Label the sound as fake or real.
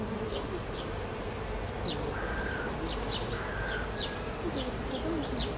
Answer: real